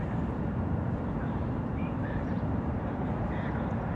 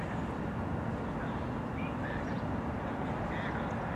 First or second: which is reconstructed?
first